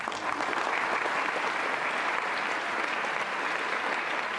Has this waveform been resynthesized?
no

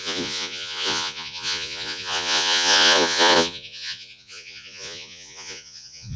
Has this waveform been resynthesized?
yes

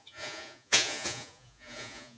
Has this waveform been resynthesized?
yes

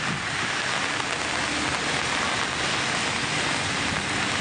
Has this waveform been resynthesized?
no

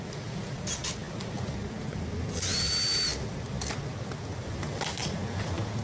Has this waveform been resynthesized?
no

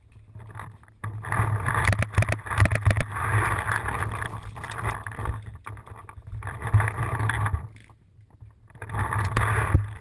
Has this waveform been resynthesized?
no